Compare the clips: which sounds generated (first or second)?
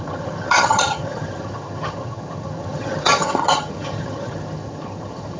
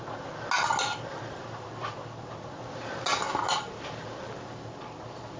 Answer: first